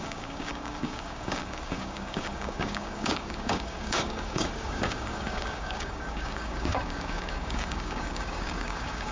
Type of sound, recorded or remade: remade